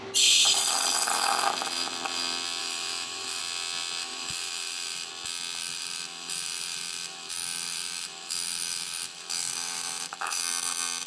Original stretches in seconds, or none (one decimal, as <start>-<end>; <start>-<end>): 0.0-2.6; 3.4-4.0; 5.1-5.6; 10.4-11.1

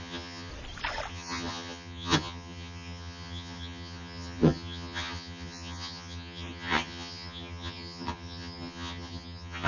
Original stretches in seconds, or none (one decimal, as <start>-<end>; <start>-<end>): 0.5-1.1

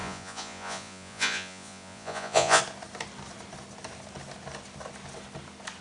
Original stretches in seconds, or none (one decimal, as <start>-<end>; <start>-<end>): 2.6-5.8

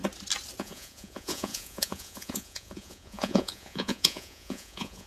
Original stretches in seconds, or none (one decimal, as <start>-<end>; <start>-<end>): 0.0-0.6